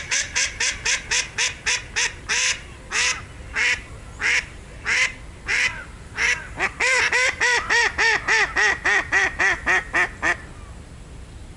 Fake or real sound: real